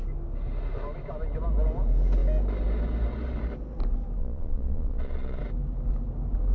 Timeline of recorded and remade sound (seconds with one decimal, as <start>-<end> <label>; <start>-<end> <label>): 0.0-4.2 recorded; 4.2-5.4 remade; 5.4-6.5 recorded